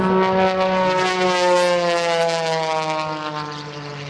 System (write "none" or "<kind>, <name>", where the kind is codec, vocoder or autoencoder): none